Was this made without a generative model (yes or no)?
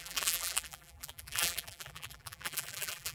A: no